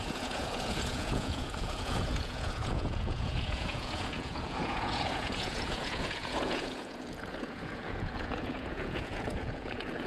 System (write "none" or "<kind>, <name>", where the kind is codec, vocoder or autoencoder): vocoder, Vocos